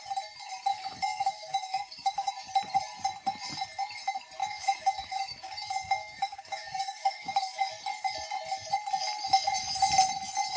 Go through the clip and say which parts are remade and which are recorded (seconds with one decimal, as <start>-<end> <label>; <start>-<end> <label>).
0.0-0.7 recorded; 0.7-2.3 remade; 2.3-4.4 recorded; 4.4-7.7 remade; 7.7-10.6 recorded